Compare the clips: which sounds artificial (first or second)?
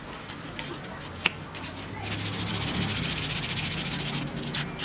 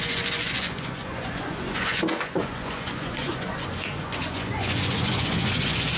second